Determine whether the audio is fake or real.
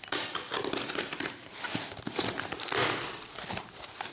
fake